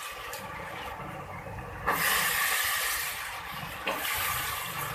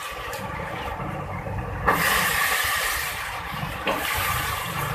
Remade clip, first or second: second